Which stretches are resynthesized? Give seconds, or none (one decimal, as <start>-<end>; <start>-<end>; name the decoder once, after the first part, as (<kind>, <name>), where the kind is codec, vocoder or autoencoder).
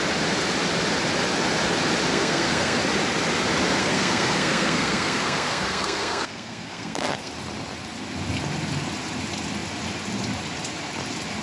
2.1-2.8 (codec, SNAC); 3.8-7.3